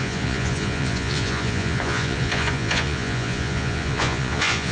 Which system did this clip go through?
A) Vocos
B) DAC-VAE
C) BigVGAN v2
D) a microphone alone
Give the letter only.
A